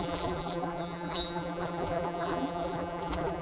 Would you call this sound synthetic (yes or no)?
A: yes